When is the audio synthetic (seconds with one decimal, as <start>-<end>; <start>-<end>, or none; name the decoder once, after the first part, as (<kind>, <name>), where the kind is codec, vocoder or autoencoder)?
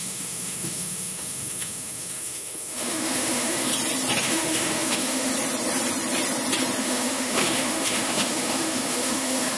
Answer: 0.0-3.7 (autoencoder, DAC-VAE); 4.2-5.3; 6.8-9.6